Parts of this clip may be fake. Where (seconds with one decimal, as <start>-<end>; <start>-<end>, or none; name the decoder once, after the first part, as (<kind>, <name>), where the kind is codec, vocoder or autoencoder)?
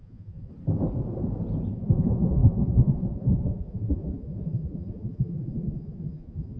0.0-0.5 (vocoder, Vocos); 1.7-6.6